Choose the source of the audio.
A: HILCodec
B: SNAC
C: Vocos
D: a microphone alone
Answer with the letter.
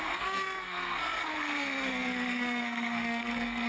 B